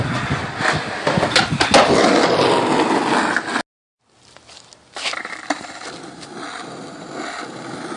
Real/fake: real